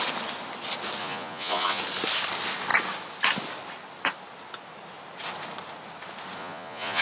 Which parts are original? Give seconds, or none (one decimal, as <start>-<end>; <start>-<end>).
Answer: 0.0-1.0; 1.8-6.4